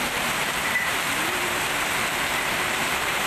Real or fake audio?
fake